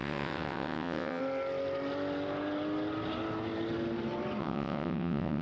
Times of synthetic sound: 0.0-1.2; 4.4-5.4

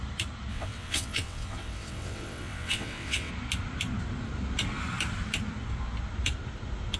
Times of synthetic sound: 0.5-3.3